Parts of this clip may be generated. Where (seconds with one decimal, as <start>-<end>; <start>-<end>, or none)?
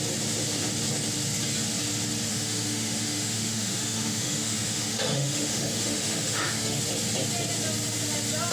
2.3-6.8